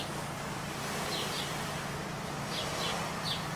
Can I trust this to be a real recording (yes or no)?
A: yes